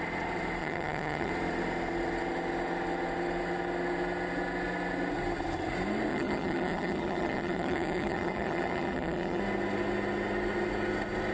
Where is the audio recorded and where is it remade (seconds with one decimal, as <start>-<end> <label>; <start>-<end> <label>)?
0.0-0.6 recorded; 0.6-1.3 remade; 1.3-6.1 recorded; 6.1-9.4 remade; 9.4-11.3 recorded